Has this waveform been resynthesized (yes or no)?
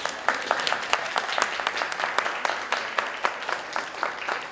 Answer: no